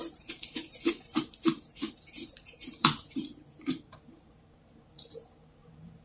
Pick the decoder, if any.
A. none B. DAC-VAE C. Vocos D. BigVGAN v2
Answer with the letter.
D